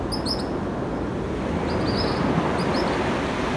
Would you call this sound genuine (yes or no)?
yes